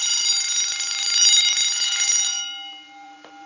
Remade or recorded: remade